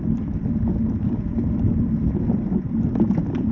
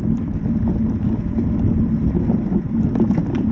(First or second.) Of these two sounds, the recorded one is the second